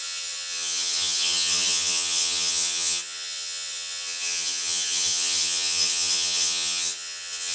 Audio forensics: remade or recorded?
remade